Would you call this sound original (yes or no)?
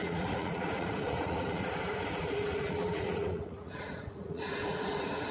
no